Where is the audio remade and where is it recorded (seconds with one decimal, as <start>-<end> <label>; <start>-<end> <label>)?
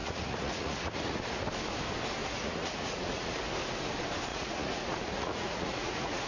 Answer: 0.0-1.2 remade; 1.2-2.2 recorded; 2.2-3.3 remade; 3.3-4.3 recorded; 4.3-6.3 remade